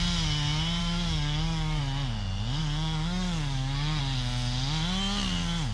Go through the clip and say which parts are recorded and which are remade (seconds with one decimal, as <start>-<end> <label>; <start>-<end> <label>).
0.0-0.8 recorded; 0.8-1.8 remade; 1.8-2.6 recorded; 2.6-4.0 remade; 4.0-5.7 recorded